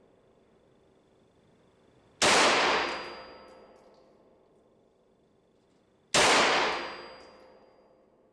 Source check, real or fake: real